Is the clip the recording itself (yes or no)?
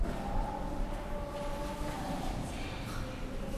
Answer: yes